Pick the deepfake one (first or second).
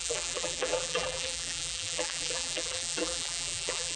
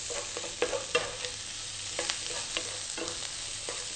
first